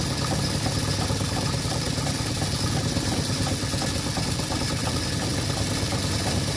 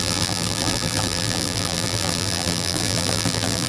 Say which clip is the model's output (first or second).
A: second